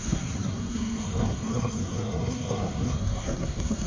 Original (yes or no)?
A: no